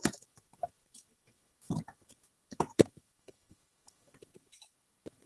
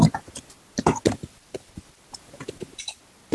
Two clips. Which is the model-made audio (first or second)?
first